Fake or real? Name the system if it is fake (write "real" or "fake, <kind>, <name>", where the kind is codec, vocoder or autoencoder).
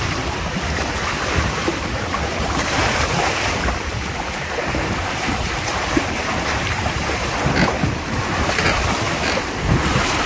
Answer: fake, vocoder, BigVGAN v2